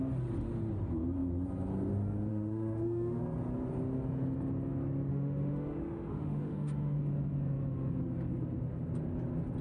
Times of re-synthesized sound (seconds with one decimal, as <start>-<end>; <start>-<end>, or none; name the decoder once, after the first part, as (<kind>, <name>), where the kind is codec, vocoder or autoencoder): 2.3-3.2 (autoencoder, DAC-VAE); 5.1-7.0